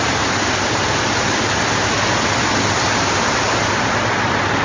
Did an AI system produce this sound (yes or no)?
no